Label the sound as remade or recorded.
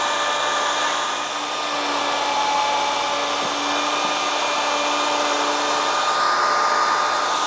recorded